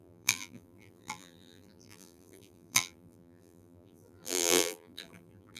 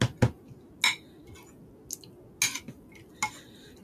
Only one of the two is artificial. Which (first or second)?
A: first